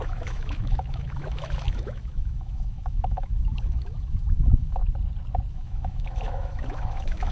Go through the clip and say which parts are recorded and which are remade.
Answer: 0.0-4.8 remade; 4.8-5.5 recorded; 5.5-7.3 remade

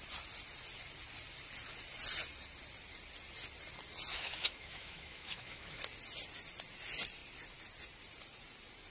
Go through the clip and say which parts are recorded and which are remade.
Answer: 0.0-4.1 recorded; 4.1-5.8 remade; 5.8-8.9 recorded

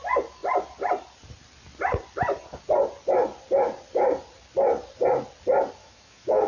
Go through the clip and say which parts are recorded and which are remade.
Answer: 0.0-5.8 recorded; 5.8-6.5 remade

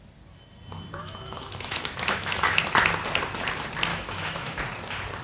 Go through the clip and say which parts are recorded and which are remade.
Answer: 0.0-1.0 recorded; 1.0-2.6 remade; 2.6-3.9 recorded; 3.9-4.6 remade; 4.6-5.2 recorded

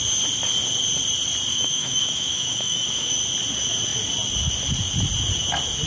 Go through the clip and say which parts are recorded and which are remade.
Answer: 0.0-1.5 recorded; 1.5-3.1 remade; 3.1-5.9 recorded

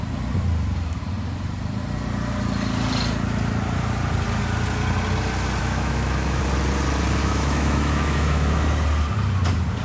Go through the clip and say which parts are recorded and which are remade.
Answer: 0.0-5.6 recorded; 5.6-6.4 remade; 6.4-7.2 recorded; 7.2-8.7 remade; 8.7-9.8 recorded